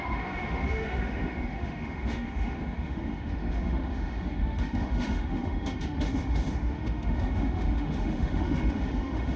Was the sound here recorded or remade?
remade